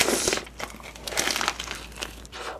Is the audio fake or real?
fake